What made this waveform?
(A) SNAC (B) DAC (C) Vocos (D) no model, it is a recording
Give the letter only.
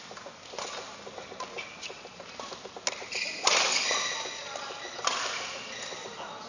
D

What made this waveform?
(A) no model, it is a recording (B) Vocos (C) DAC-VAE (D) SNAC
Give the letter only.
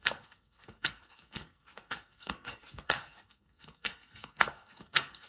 D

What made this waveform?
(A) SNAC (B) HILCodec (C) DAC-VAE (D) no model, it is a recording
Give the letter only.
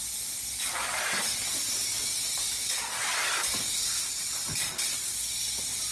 D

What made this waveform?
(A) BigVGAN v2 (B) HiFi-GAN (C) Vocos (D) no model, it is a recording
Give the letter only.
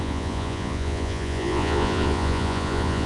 C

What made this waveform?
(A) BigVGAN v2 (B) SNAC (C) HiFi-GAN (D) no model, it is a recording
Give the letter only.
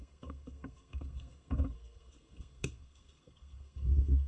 B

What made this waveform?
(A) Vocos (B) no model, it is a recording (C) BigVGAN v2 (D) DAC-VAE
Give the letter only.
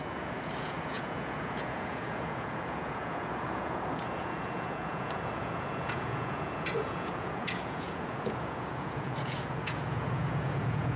A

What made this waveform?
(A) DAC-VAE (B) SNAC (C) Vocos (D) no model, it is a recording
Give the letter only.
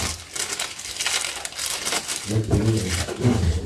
D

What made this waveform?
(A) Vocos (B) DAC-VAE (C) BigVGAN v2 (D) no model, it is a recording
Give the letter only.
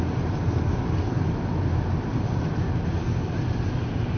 D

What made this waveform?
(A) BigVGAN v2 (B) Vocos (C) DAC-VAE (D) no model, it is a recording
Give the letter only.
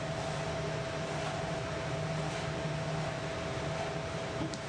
D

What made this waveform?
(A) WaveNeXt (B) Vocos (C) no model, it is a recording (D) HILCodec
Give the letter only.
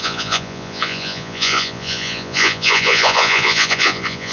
B